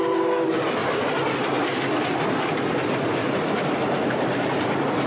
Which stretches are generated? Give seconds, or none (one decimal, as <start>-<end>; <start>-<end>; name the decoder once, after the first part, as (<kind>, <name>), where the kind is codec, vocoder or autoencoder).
3.2-3.8 (vocoder, BigVGAN v2)